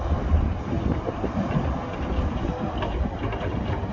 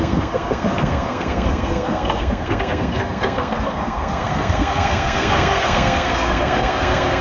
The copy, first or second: second